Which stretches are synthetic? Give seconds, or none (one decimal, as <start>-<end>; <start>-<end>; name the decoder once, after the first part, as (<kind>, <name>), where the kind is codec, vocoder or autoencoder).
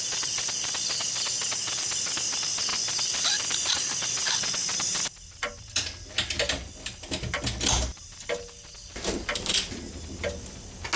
none